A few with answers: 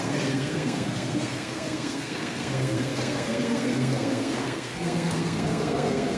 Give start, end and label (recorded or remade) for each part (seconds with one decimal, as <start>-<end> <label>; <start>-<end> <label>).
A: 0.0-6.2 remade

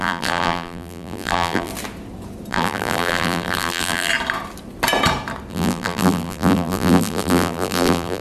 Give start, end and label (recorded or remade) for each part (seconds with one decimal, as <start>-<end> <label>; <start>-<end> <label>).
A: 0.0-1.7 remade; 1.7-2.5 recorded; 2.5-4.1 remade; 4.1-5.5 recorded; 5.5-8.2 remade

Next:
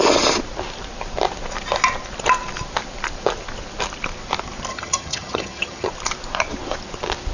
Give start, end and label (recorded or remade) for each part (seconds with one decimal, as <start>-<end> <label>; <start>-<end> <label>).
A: 0.0-4.7 recorded; 4.7-5.9 remade; 5.9-7.3 recorded